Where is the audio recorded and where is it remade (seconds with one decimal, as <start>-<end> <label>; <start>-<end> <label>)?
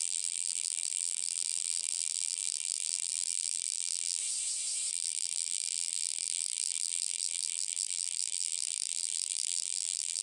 0.0-4.2 remade; 4.2-4.9 recorded; 4.9-10.2 remade